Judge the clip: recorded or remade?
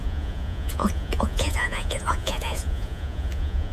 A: remade